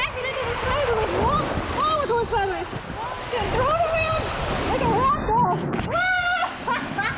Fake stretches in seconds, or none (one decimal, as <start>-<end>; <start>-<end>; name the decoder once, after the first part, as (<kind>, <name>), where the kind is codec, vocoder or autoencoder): none